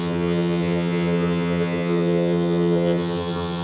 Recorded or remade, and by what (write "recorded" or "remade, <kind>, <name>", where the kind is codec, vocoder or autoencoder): remade, vocoder, HiFi-GAN